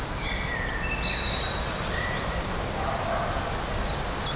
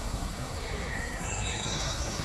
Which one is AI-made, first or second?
second